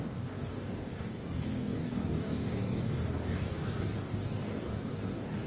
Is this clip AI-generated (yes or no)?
yes